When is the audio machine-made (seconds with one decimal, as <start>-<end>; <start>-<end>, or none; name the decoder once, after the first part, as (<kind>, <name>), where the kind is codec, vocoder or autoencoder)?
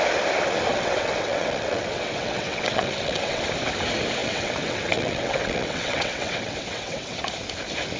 0.7-3.4 (vocoder, WaveNeXt); 4.2-7.2